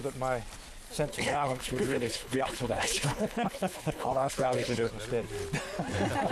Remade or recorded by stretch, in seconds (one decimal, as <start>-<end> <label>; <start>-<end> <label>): 0.0-1.1 recorded; 1.1-4.9 remade; 4.9-6.3 recorded